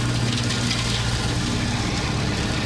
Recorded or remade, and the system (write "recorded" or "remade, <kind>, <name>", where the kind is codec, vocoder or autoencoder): recorded